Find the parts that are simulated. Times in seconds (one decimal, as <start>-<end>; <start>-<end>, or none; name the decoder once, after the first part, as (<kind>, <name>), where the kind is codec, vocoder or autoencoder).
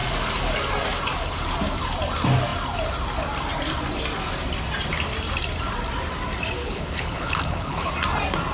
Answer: 6.6-7.9 (codec, HILCodec)